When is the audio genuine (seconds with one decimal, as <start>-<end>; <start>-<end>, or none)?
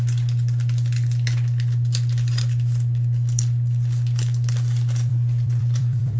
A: 0.0-5.1